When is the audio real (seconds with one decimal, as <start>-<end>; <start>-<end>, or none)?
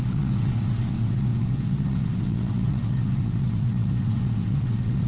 none